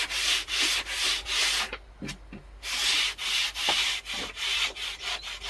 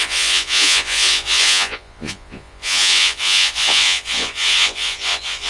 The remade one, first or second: second